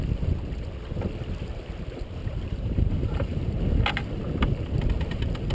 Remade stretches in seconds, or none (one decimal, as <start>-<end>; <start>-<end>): 2.2-3.4